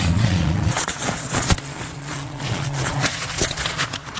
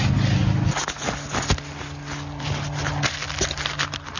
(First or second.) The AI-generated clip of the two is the first